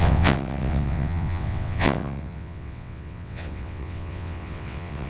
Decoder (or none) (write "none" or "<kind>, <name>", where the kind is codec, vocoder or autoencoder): vocoder, WaveNeXt